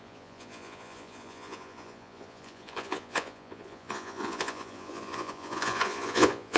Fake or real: fake